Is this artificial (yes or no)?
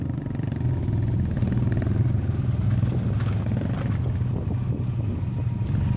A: no